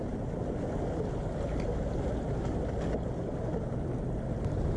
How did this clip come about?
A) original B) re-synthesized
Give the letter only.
A